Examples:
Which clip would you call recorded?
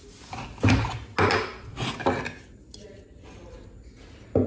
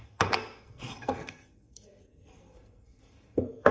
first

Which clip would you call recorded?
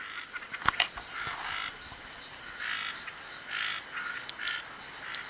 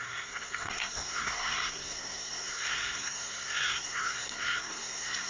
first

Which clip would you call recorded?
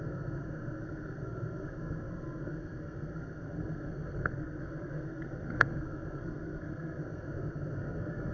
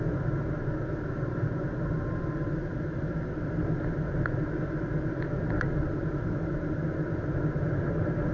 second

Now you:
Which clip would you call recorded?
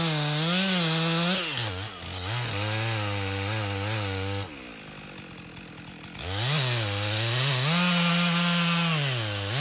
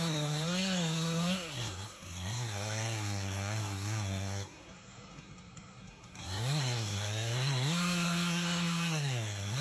first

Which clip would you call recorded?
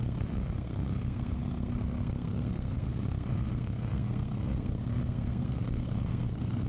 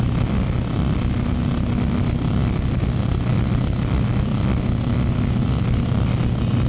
second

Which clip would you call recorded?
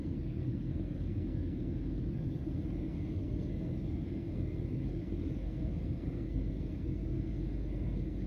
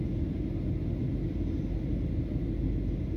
second